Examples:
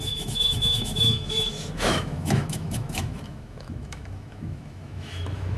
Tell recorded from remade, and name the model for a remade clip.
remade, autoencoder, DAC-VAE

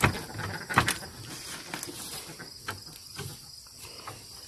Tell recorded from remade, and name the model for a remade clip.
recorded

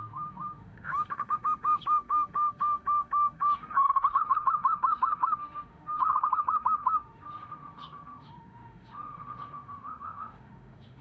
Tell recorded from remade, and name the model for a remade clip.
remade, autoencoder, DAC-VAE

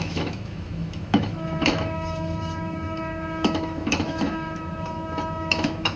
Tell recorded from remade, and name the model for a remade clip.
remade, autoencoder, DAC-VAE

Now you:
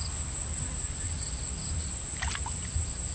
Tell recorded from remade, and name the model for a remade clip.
recorded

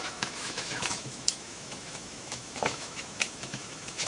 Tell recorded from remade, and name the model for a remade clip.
remade, autoencoder, DAC-VAE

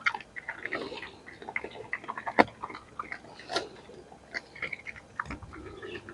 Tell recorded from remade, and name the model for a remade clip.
recorded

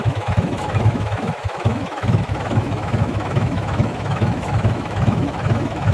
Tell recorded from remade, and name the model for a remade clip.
remade, autoencoder, DAC-VAE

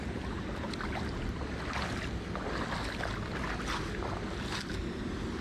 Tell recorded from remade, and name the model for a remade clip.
recorded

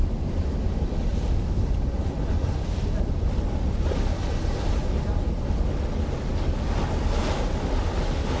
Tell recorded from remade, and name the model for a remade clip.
recorded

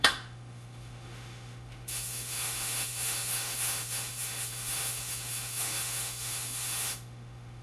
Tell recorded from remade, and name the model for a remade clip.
remade, autoencoder, DAC-VAE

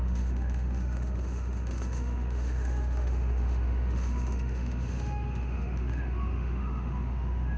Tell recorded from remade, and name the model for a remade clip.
remade, autoencoder, DAC-VAE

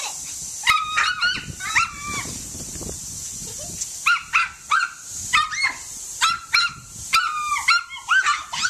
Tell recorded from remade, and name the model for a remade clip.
recorded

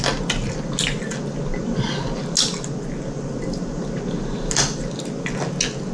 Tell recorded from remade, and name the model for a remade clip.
recorded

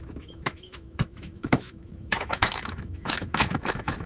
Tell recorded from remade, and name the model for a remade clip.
remade, autoencoder, DAC-VAE